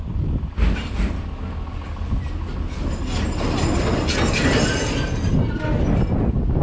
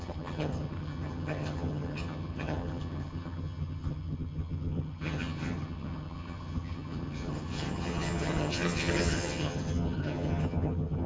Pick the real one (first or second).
first